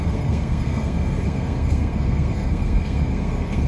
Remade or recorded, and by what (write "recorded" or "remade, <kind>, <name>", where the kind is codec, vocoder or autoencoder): remade, codec, SNAC